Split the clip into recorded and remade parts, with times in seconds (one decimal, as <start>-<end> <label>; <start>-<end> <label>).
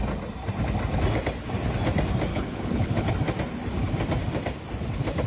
0.0-2.3 recorded; 2.3-3.1 remade; 3.1-5.3 recorded